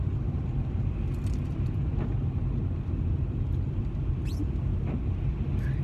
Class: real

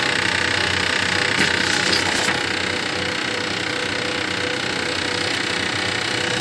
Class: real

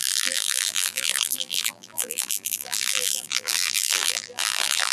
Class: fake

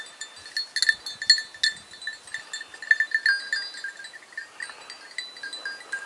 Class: real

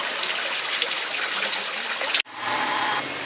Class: real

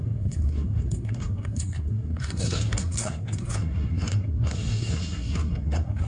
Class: fake